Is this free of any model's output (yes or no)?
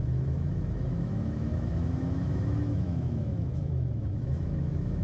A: no